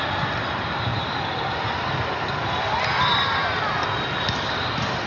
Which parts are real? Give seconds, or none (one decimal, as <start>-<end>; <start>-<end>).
0.0-5.1